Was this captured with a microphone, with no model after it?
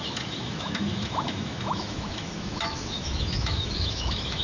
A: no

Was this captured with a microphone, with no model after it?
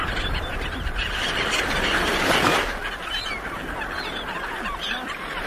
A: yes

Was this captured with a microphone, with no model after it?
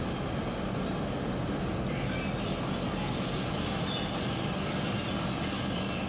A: yes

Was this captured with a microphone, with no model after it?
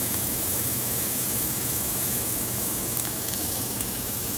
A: no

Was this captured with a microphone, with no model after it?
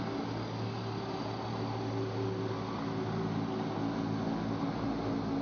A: yes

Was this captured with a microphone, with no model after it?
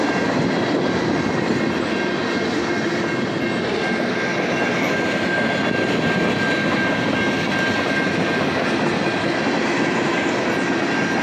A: yes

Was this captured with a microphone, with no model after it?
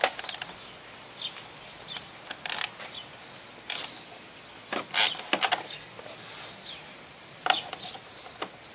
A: yes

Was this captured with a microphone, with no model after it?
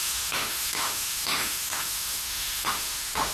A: no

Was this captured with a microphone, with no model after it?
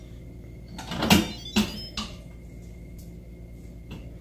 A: yes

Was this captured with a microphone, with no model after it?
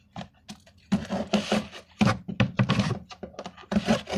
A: yes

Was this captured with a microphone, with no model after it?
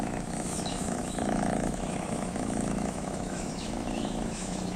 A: no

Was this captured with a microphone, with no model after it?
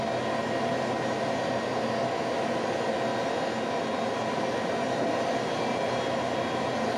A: yes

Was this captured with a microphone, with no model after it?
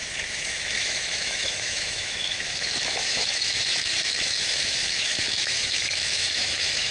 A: no